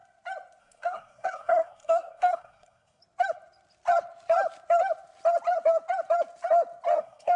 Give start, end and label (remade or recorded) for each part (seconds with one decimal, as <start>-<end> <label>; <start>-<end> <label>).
0.0-0.6 recorded; 0.6-3.0 remade; 3.0-7.0 recorded; 7.0-7.4 remade